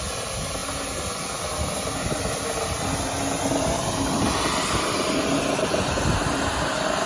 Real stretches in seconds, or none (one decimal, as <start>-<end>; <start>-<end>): 0.0-7.1